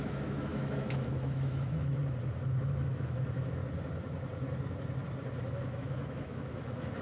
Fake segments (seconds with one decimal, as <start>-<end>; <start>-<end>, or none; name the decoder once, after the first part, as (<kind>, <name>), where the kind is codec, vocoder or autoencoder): 0.0-2.0 (autoencoder, DAC-VAE); 2.6-3.6; 5.5-7.0